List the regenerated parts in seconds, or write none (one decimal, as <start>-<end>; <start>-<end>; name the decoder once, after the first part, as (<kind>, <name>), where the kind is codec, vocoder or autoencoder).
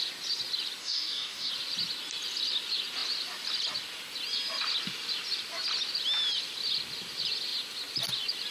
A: 0.8-1.5 (codec, DAC)